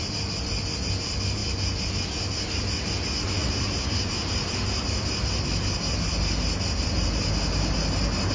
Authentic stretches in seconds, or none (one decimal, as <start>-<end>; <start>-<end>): 0.0-8.3